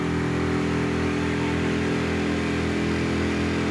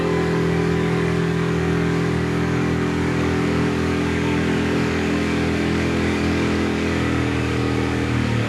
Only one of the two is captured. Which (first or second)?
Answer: first